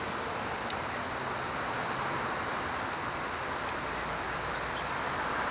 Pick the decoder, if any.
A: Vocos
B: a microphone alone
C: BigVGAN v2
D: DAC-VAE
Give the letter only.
B